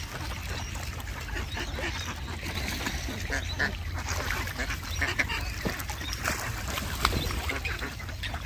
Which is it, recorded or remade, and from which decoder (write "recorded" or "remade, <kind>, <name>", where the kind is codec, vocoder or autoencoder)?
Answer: recorded